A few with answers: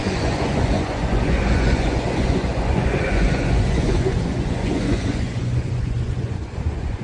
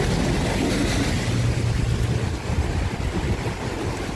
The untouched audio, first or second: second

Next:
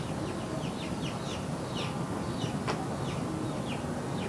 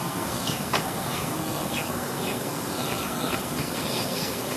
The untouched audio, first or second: first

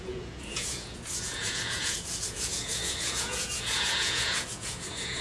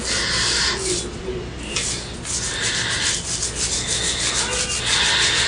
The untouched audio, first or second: second